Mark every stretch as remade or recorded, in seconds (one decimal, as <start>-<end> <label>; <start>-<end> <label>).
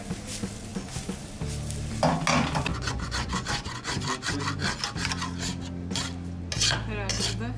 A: 0.0-2.7 recorded; 2.7-3.9 remade; 3.9-7.6 recorded